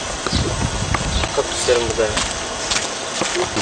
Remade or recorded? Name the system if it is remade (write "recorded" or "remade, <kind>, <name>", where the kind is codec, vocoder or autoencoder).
recorded